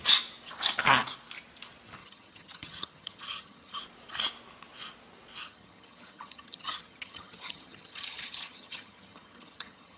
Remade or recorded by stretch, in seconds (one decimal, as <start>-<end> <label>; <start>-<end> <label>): 0.0-2.0 recorded; 2.0-3.8 remade; 3.8-5.4 recorded; 5.4-10.0 remade